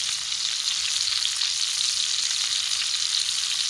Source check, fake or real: real